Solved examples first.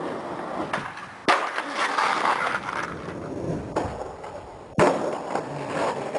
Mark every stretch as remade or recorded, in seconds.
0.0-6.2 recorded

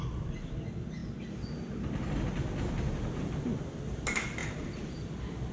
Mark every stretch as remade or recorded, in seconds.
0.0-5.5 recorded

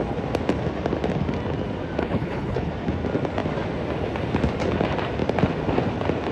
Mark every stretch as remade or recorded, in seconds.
0.0-2.0 recorded; 2.0-2.7 remade; 2.7-6.3 recorded

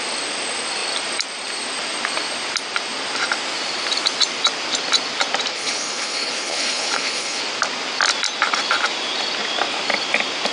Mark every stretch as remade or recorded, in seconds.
0.0-5.5 recorded; 5.5-7.4 remade; 7.4-10.5 recorded